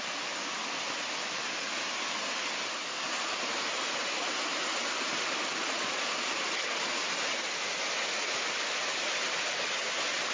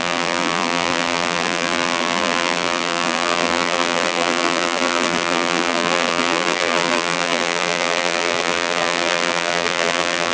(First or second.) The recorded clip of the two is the first